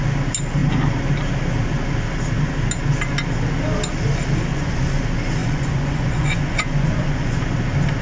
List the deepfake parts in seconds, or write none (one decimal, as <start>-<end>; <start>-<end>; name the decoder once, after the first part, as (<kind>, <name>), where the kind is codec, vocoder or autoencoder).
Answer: 4.5-5.0 (vocoder, Vocos); 5.4-7.4